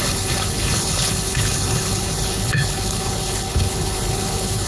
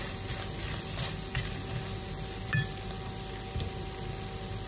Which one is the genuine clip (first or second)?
second